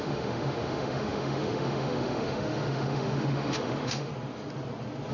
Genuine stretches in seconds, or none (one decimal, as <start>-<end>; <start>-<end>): 4.1-5.1